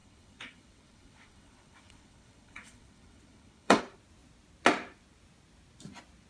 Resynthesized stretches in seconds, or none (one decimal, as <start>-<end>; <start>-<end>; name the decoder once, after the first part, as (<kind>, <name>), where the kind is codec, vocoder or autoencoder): 0.0-3.8 (vocoder, WaveNeXt)